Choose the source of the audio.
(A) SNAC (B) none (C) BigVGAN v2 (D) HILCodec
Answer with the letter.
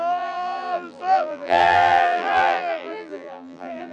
C